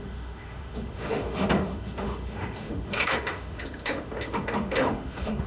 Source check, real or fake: fake